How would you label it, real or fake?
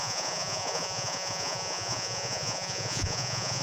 fake